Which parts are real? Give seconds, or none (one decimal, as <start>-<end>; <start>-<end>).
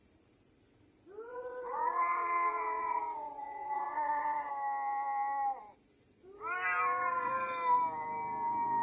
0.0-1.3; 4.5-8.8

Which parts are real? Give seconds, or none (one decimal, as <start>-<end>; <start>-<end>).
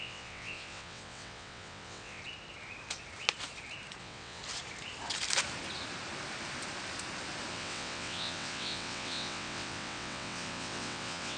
2.2-4.0; 4.4-7.5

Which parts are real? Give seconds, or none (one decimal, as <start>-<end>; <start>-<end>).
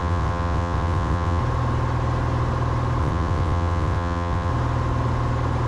1.4-3.0; 4.5-5.7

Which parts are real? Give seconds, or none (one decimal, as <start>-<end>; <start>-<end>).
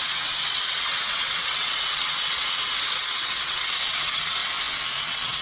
4.4-4.9